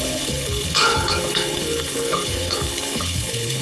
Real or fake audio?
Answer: fake